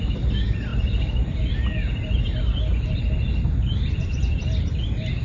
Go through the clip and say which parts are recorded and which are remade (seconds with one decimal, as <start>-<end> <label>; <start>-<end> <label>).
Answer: 0.0-5.2 recorded

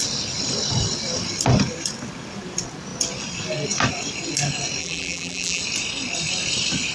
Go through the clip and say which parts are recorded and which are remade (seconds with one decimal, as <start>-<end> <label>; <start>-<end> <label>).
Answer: 0.0-4.8 recorded; 4.8-5.6 remade; 5.6-6.9 recorded

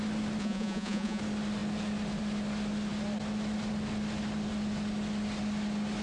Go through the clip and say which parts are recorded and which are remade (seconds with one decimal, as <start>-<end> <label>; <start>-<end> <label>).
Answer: 0.0-0.4 recorded; 0.4-1.2 remade; 1.2-6.0 recorded